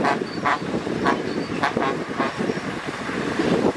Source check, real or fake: fake